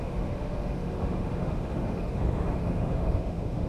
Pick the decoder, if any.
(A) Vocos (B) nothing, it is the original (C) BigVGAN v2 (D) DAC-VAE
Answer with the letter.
D